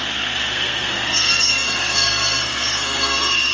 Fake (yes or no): yes